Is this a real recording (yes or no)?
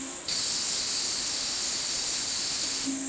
yes